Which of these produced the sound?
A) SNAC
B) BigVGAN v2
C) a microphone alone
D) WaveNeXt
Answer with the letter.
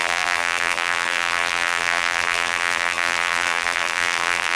B